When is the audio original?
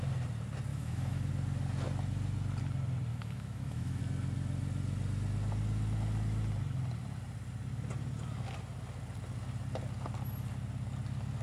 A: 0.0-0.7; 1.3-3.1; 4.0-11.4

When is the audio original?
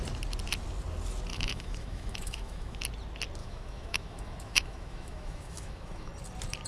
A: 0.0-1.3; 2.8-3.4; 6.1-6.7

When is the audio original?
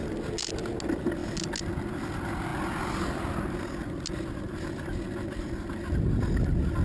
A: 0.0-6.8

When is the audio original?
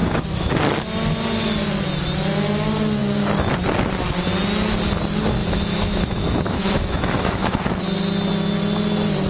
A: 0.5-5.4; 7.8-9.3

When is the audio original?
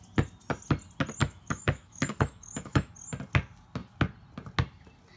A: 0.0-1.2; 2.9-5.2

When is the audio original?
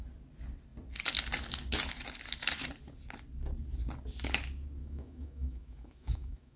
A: 0.0-4.8